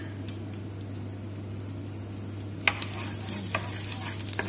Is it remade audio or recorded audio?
recorded